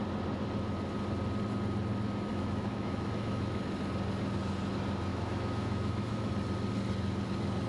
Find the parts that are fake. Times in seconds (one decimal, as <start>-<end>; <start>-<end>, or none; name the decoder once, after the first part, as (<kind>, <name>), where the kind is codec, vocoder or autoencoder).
2.3-3.6 (autoencoder, DAC-VAE); 5.1-6.3